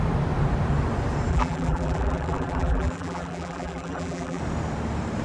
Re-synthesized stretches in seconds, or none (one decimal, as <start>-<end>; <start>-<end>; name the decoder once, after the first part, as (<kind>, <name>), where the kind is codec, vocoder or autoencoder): 1.3-4.4 (vocoder, BigVGAN v2)